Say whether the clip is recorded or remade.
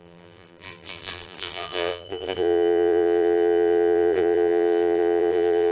remade